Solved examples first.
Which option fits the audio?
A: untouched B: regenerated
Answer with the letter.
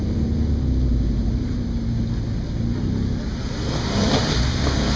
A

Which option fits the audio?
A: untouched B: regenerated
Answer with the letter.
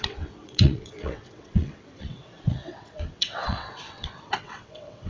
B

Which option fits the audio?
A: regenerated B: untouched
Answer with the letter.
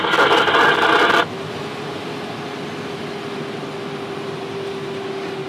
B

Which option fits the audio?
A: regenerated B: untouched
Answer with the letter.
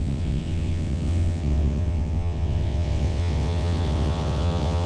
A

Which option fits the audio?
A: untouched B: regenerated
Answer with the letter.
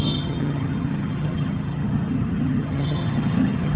B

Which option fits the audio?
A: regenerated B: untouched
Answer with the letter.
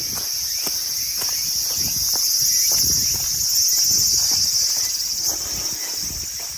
B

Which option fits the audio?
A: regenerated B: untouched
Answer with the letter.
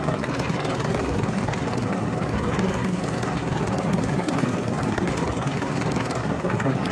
A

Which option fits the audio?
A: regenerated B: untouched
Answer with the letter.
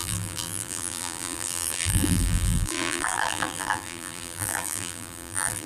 A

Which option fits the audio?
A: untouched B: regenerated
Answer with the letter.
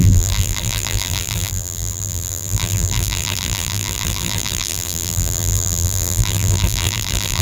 B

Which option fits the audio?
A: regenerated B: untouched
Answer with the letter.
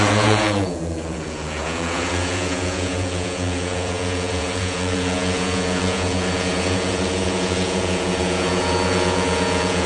A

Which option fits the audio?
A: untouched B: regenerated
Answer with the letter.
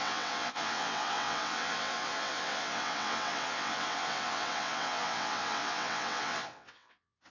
B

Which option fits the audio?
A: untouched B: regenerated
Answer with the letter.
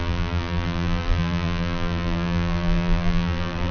B